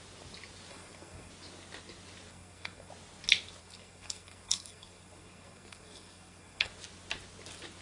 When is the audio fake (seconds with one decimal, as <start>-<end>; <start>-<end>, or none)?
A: 0.7-1.3; 2.3-2.9; 3.6-6.7